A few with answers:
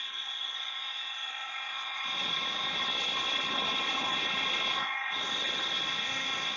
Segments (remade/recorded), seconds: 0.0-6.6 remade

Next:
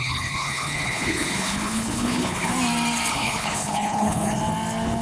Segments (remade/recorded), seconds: 0.0-2.5 remade; 2.5-3.1 recorded; 3.1-4.4 remade; 4.4-5.0 recorded

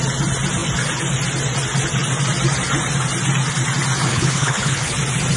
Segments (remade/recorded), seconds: 0.0-4.1 recorded; 4.1-4.9 remade; 4.9-5.4 recorded

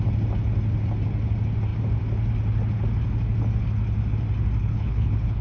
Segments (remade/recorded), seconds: 0.0-4.6 recorded; 4.6-5.4 remade

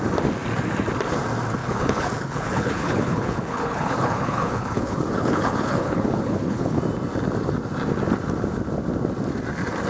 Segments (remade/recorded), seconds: 0.0-1.6 recorded; 1.6-6.8 remade; 6.8-9.9 recorded

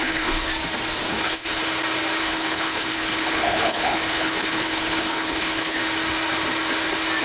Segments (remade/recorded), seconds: 0.0-0.5 remade; 0.5-1.1 recorded; 1.1-1.6 remade; 1.6-2.2 recorded; 2.2-5.8 remade; 5.8-7.2 recorded

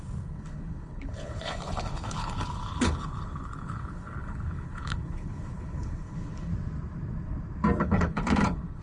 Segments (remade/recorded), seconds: 0.0-6.5 remade; 6.5-7.8 recorded; 7.8-8.8 remade

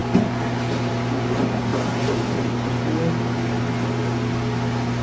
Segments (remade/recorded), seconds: 0.0-5.0 recorded